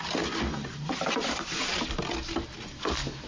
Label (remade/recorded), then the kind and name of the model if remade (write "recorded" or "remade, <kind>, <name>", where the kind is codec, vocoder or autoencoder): recorded